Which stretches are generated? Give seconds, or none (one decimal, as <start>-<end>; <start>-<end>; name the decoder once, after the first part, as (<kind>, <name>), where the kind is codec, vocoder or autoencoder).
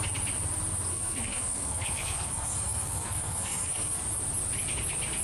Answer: 0.9-4.0 (codec, SNAC)